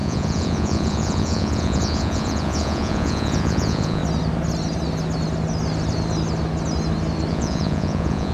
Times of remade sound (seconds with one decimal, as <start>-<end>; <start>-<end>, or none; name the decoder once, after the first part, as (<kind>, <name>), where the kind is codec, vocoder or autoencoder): 0.0-4.0 (vocoder, Vocos); 7.3-8.3